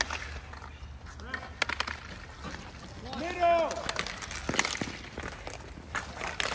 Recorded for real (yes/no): yes